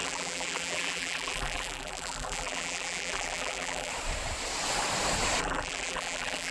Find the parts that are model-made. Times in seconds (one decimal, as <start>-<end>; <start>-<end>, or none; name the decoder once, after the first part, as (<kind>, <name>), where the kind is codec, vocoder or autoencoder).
0.0-3.9 (vocoder, BigVGAN v2); 5.4-6.5